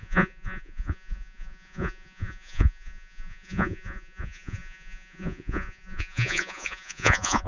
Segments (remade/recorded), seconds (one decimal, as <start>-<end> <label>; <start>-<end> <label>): 0.0-7.5 remade